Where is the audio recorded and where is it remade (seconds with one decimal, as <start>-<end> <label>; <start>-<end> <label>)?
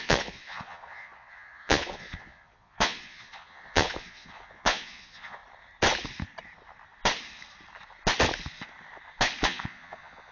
0.0-5.4 remade; 5.4-9.4 recorded; 9.4-10.3 remade